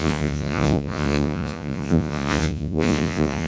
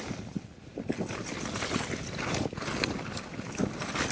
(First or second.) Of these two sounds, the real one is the second